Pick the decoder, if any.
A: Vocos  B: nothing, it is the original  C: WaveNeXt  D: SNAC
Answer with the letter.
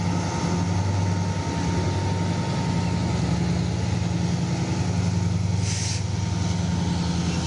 B